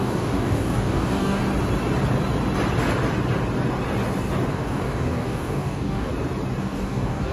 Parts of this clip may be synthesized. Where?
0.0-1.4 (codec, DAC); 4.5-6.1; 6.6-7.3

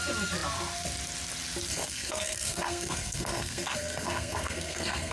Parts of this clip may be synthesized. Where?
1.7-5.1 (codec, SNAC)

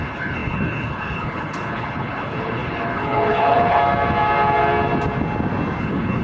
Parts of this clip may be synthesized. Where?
0.0-3.8 (codec, HILCodec); 5.8-6.2

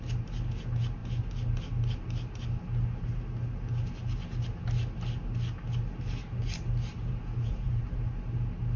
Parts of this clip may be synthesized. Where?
7.0-7.8 (vocoder, Vocos)

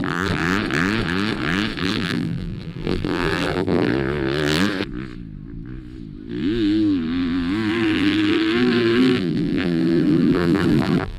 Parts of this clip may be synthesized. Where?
0.0-0.4 (vocoder, BigVGAN v2); 1.8-3.9; 7.7-11.2

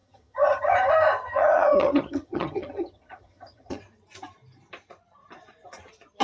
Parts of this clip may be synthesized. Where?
0.0-0.9 (vocoder, HiFi-GAN); 1.3-3.8